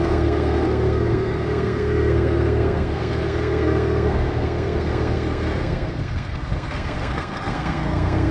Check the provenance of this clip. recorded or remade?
remade